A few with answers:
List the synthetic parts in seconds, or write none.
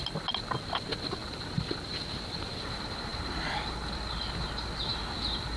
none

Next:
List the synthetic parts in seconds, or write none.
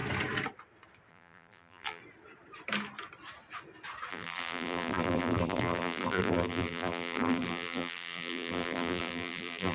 1.1-2.0 (vocoder, BigVGAN v2); 4.1-9.7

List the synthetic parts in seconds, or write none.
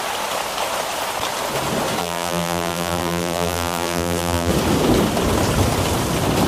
2.0-4.5 (vocoder, BigVGAN v2)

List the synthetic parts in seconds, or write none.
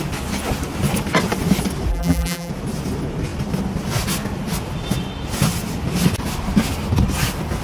1.9-2.5 (vocoder, BigVGAN v2)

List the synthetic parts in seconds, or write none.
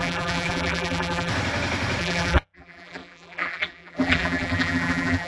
0.0-1.3 (vocoder, BigVGAN v2); 2.0-5.3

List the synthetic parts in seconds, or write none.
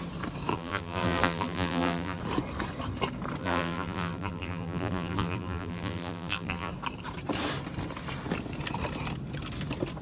0.5-2.2 (vocoder, BigVGAN v2); 3.4-6.7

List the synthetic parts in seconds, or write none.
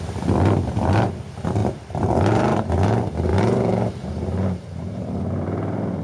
1.6-2.7 (vocoder, BigVGAN v2); 3.3-6.0